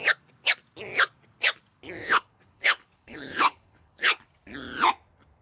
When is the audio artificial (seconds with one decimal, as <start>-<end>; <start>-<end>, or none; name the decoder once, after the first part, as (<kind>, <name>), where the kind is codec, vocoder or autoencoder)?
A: 2.0-4.2 (codec, HILCodec)